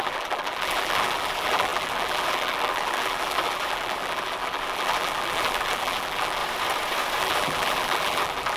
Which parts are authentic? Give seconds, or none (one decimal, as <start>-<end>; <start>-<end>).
6.4-7.2